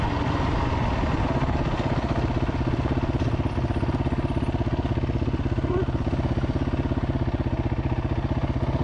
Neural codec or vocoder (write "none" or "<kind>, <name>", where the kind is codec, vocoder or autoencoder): none